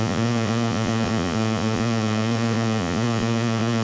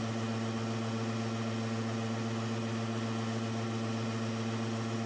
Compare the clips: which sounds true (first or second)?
second